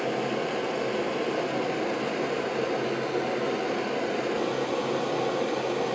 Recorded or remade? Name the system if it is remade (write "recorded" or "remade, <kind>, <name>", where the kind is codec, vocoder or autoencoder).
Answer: recorded